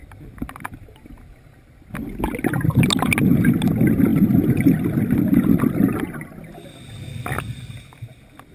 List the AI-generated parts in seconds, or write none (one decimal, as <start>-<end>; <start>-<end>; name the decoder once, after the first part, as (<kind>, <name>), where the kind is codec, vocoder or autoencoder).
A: none